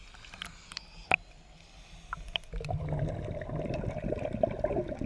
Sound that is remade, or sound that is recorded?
recorded